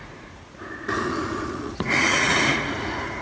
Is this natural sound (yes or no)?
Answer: no